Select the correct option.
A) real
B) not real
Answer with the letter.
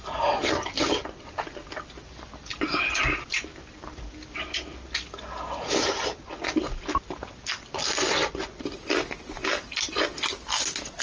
A